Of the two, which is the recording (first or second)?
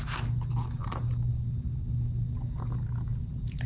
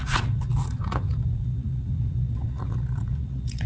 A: first